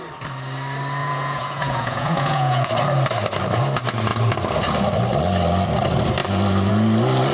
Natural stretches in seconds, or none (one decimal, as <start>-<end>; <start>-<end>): 0.0-1.0; 2.7-7.3